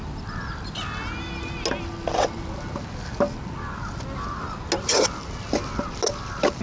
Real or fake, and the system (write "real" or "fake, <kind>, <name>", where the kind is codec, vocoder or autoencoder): real